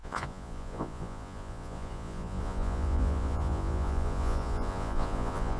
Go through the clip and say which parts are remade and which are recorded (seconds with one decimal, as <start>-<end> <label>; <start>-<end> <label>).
0.0-5.6 remade